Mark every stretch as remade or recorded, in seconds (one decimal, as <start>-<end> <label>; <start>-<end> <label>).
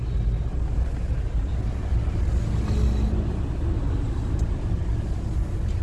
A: 0.0-5.8 recorded